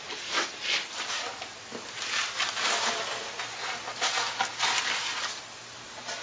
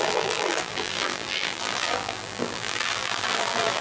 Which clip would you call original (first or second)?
first